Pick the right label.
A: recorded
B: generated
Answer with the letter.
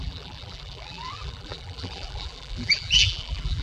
B